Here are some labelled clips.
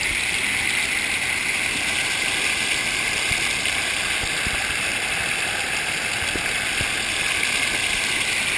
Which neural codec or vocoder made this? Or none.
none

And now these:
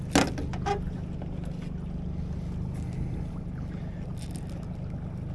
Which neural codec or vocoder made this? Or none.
none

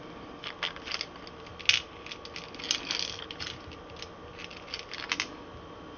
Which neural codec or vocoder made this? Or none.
none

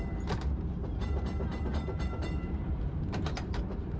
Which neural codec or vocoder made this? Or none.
vocoder, BigVGAN v2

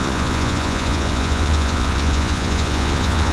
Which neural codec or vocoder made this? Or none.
vocoder, Vocos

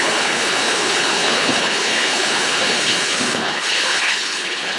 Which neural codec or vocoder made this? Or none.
codec, HILCodec